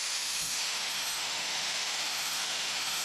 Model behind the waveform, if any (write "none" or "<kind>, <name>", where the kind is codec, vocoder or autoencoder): autoencoder, DAC-VAE